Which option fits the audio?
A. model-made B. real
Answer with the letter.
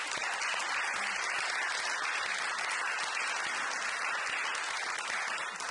B